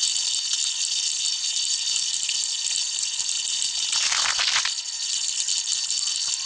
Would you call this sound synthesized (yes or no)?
no